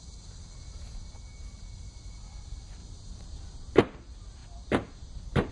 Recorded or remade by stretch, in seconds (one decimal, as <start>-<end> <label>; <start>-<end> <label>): 0.0-2.8 recorded; 2.8-3.8 remade; 3.8-5.5 recorded